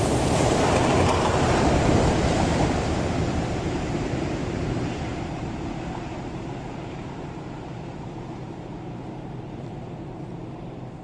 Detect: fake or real fake